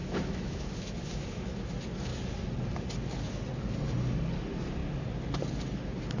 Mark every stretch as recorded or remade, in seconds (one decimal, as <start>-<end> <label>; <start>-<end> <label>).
0.0-1.7 remade; 1.7-6.2 recorded